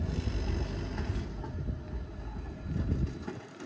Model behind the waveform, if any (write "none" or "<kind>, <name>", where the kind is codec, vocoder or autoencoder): none